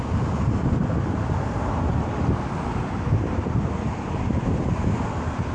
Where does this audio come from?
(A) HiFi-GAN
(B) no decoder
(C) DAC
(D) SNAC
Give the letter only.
B